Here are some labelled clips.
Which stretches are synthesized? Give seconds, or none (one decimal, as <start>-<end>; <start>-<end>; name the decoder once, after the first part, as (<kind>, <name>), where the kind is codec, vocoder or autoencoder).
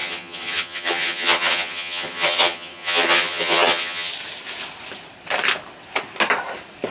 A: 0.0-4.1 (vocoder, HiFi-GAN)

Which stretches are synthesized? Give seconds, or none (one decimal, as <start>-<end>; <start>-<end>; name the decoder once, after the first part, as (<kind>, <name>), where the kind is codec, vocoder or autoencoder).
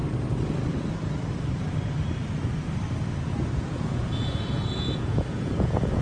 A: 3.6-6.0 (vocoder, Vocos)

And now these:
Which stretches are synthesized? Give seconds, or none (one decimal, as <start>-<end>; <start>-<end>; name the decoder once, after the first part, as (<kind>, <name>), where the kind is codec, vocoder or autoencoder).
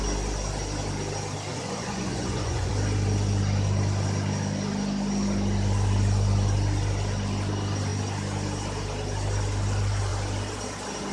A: 1.5-2.7 (vocoder, Vocos)